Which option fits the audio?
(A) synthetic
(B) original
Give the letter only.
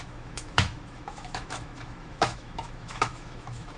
A